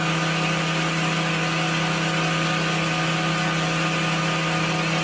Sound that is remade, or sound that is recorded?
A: recorded